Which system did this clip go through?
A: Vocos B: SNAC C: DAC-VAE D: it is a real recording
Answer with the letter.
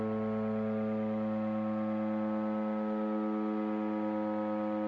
D